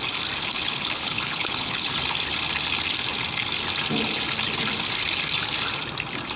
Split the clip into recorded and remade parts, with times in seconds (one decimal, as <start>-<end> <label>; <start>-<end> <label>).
0.0-0.5 recorded; 0.5-1.9 remade; 1.9-6.4 recorded